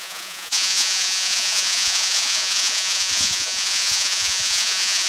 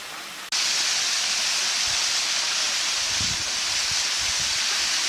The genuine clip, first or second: second